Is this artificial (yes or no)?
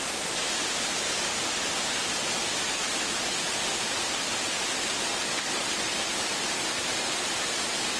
no